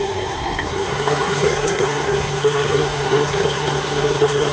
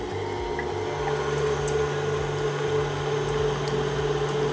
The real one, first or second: second